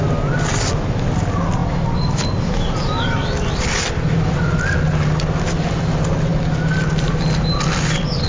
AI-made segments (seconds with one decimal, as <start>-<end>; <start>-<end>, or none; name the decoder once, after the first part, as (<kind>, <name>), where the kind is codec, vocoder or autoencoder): none